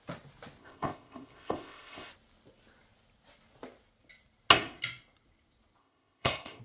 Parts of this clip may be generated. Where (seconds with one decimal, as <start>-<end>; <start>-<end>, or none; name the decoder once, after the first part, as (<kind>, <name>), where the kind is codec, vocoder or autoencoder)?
0.6-2.1 (codec, ZipCodec); 5.8-6.6